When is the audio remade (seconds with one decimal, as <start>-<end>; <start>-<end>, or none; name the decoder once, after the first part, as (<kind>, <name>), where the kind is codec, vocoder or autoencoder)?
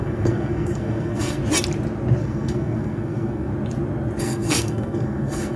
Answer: 0.0-1.4 (codec, SNAC); 2.2-3.5; 4.2-5.6